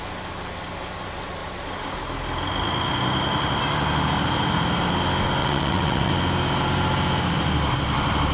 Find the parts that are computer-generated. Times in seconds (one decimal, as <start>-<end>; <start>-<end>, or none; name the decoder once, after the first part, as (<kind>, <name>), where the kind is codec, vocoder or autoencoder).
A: 5.4-6.1 (vocoder, WaveNeXt)